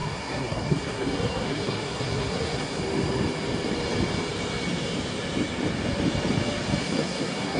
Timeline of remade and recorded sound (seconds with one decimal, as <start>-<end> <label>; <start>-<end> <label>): 0.0-2.8 remade; 2.8-6.8 recorded; 6.8-7.6 remade